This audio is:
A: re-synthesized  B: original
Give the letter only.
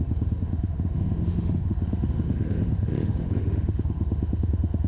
A